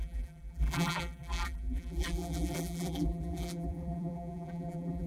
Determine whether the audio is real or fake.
fake